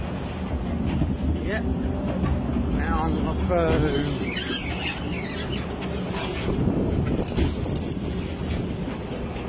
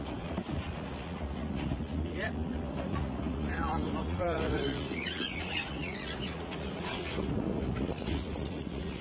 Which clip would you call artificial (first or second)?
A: second